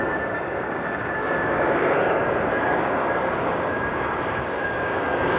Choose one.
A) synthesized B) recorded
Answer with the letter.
A